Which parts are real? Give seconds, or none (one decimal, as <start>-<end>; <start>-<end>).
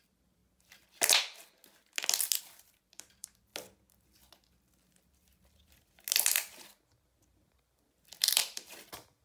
0.4-2.4; 3.5-7.0